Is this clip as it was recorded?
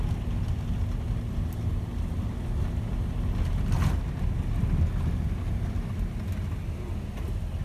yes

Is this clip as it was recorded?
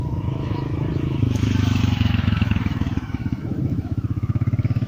no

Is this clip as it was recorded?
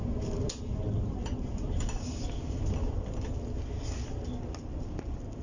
yes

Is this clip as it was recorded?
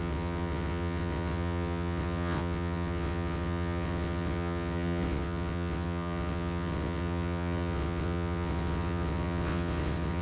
no